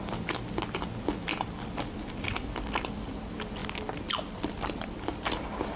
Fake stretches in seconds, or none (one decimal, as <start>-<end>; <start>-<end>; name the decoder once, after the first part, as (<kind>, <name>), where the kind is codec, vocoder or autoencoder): none